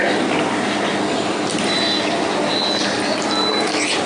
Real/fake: real